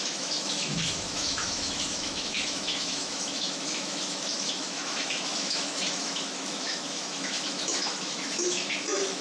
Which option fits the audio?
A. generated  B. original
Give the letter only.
A